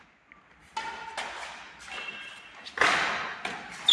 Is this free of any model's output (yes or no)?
yes